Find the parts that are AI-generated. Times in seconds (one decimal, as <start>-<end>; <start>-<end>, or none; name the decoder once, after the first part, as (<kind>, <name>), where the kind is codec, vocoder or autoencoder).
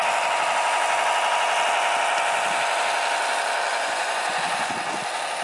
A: 3.7-4.7 (vocoder, Vocos)